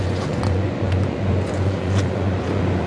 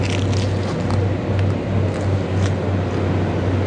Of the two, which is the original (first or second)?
second